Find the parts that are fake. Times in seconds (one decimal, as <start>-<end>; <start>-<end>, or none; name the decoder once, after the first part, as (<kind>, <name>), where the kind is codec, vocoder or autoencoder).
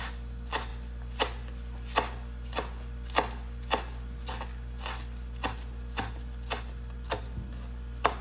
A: none